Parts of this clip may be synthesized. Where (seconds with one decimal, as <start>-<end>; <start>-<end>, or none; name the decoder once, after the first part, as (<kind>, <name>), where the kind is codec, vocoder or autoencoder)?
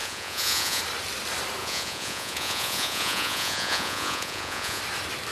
0.0-0.8 (vocoder, Vocos); 1.6-4.8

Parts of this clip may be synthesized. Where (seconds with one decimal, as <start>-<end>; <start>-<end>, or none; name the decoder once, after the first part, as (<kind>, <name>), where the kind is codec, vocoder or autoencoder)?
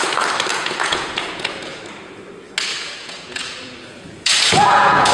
0.5-1.8 (vocoder, Vocos); 2.7-5.1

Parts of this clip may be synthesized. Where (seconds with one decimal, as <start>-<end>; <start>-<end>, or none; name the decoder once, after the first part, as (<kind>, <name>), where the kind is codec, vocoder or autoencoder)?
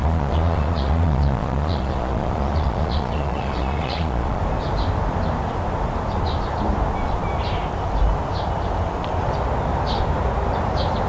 0.0-4.4 (vocoder, Vocos)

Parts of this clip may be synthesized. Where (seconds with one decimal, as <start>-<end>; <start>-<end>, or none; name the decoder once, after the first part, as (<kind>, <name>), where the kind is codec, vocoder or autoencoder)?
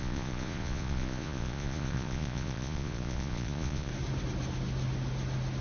0.0-3.9 (vocoder, Vocos)